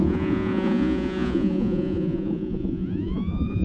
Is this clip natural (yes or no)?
no